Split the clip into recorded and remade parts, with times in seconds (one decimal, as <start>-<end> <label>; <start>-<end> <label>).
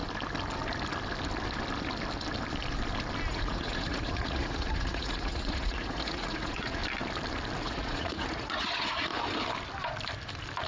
0.0-3.3 recorded; 3.3-6.8 remade; 6.8-7.6 recorded; 7.6-9.1 remade; 9.1-10.7 recorded